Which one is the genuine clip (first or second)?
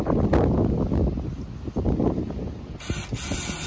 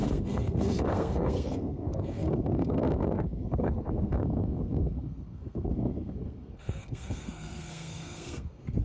first